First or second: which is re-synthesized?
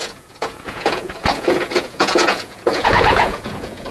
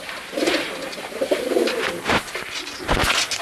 first